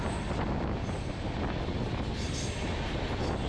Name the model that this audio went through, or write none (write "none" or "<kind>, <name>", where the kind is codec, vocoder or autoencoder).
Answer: none